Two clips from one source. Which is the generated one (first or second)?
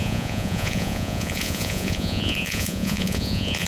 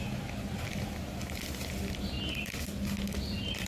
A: first